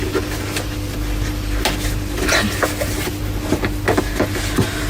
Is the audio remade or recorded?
recorded